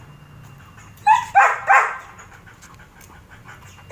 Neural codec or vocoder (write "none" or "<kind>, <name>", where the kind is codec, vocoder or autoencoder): none